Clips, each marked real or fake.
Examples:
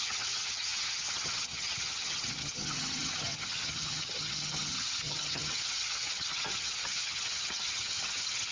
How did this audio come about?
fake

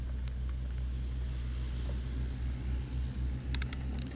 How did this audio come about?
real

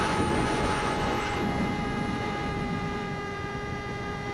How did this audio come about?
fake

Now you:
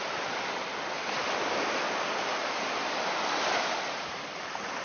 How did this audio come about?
fake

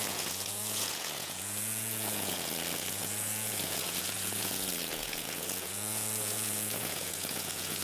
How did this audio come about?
fake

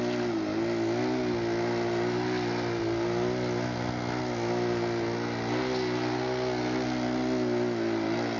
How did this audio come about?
real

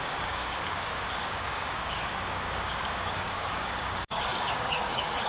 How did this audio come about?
fake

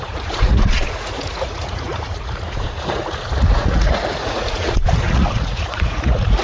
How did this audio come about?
fake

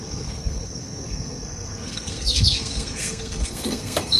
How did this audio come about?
fake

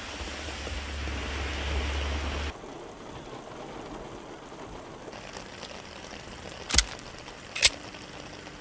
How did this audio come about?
real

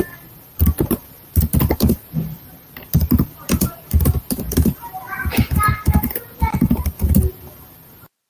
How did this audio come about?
real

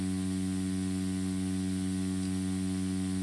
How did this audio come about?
real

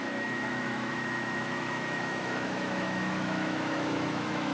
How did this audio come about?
fake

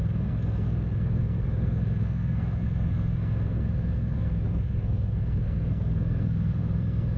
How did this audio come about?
fake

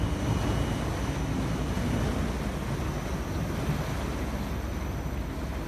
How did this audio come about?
real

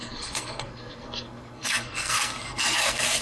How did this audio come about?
fake